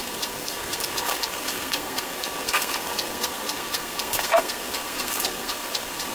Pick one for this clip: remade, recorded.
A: remade